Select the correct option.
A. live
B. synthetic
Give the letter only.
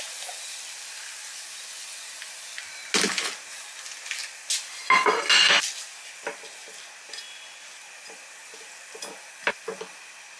A